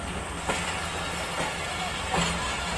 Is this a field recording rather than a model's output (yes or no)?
yes